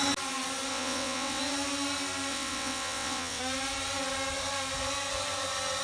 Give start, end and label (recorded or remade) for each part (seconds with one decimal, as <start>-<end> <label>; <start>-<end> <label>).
0.0-0.7 recorded; 0.7-1.4 remade; 1.4-2.3 recorded; 2.3-3.4 remade; 3.4-5.8 recorded